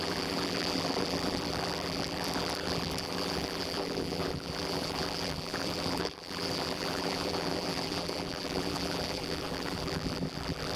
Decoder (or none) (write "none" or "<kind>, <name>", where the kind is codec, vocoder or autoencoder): vocoder, BigVGAN v2